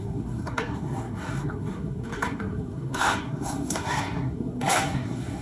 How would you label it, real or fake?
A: fake